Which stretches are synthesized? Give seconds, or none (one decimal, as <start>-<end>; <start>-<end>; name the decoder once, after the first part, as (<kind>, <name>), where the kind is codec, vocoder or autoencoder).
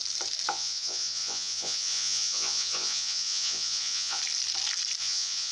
0.5-4.2 (vocoder, Vocos); 5.0-5.5